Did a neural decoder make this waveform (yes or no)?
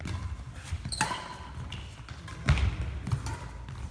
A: no